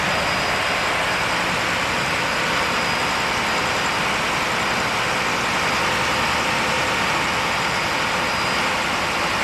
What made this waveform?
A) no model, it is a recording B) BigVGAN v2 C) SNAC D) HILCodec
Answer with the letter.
A